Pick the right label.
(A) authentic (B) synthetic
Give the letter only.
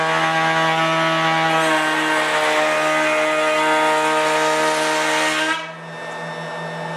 A